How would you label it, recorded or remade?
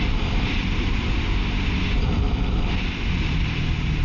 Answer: remade